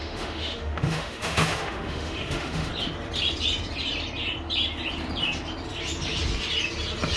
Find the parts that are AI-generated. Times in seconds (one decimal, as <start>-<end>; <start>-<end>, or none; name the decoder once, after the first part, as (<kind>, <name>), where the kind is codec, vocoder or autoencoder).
0.0-2.7 (autoencoder, DAC-VAE)